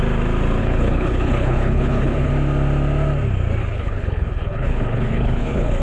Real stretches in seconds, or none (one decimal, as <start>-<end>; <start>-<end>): 0.0-0.6; 2.3-3.6